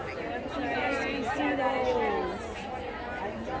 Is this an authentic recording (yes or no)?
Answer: yes